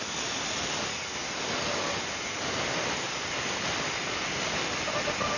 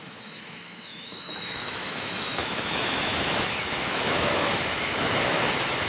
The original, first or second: first